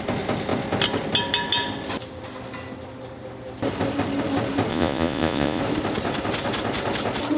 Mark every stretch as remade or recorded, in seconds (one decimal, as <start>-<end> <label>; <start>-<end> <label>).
0.0-4.7 recorded; 4.7-5.6 remade; 5.6-7.4 recorded